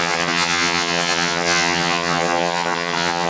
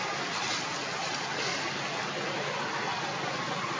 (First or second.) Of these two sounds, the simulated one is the first